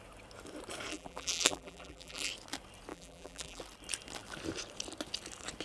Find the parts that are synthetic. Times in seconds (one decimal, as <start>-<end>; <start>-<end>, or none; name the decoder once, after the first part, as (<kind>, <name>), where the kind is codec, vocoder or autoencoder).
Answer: 0.9-2.3 (vocoder, BigVGAN v2); 2.9-3.6